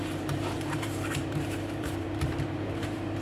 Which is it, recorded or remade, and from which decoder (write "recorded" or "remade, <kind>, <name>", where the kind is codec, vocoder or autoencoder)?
remade, vocoder, BigVGAN v2